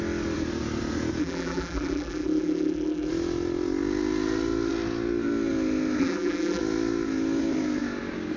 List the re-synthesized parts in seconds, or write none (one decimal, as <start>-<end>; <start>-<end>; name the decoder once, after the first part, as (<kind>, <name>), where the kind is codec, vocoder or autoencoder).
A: 1.2-3.1 (vocoder, BigVGAN v2); 6.0-6.6